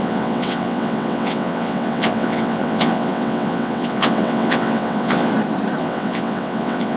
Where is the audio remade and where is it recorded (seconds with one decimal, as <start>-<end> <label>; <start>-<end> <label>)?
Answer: 0.0-5.3 remade; 5.3-5.8 recorded; 5.8-7.0 remade